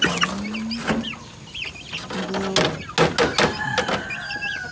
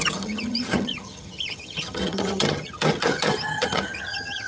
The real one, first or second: first